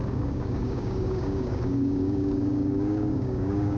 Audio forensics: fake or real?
fake